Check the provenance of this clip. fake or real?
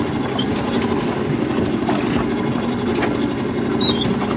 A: real